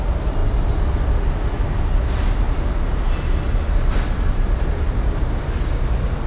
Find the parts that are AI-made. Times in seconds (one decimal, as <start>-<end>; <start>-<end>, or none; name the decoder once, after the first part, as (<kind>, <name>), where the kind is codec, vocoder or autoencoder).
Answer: none